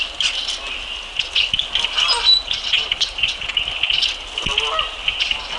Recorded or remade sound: recorded